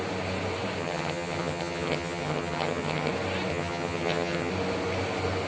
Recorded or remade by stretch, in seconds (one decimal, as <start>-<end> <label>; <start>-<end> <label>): 0.0-0.8 recorded; 0.8-3.1 remade; 3.1-3.5 recorded; 3.5-4.5 remade; 4.5-5.5 recorded